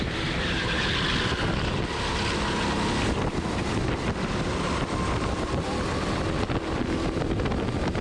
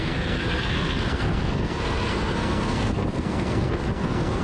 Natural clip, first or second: first